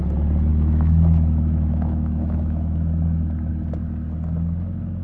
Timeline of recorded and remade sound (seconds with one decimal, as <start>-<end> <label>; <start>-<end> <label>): 0.0-0.5 recorded; 0.5-3.5 remade; 3.5-5.0 recorded